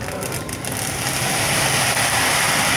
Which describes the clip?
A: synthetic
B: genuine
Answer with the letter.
B